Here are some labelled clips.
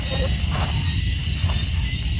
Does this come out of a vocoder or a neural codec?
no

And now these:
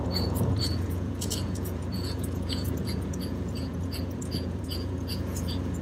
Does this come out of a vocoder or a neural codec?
yes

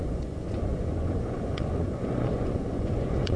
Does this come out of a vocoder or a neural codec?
yes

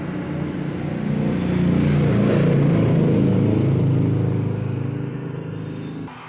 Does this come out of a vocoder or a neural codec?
no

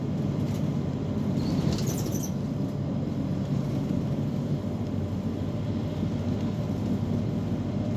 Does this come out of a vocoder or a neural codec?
no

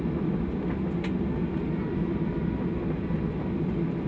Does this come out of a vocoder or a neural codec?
no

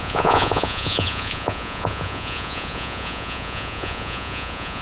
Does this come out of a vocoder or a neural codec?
yes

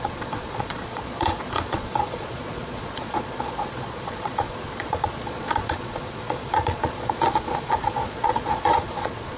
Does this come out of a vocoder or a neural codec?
yes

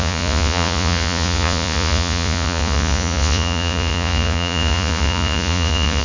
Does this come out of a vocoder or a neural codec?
yes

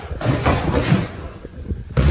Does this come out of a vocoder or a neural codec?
yes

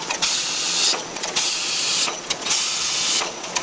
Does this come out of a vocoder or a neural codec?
yes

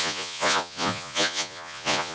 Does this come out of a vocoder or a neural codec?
yes